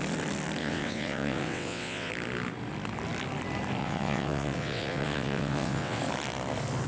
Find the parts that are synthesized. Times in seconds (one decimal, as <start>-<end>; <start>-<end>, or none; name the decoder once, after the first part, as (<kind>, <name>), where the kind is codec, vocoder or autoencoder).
0.6-2.1 (vocoder, WaveNeXt); 3.8-6.0